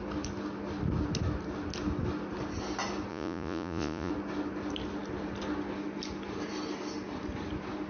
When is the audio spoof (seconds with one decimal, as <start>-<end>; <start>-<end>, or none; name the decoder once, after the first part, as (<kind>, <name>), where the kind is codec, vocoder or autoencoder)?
3.1-4.1 (vocoder, Vocos)

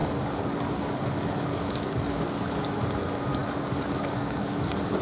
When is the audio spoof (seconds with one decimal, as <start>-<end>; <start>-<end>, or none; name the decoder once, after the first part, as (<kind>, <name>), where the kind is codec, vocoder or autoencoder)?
0.0-2.6 (codec, DAC); 3.4-4.6